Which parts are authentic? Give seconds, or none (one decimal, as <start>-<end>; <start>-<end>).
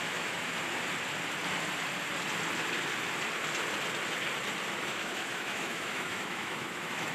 0.5-4.8